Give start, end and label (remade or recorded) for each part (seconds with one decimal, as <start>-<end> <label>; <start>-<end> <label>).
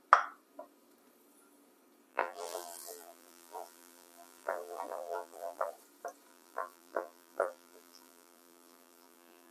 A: 0.0-2.1 recorded; 2.1-5.7 remade; 5.7-6.3 recorded; 6.3-9.5 remade